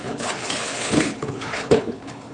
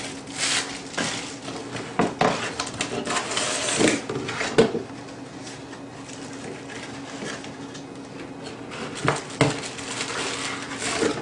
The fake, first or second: first